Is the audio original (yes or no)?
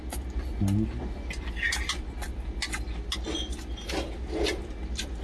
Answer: yes